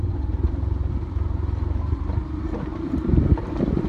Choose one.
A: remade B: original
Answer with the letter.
A